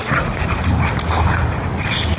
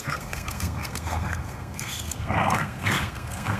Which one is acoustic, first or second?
first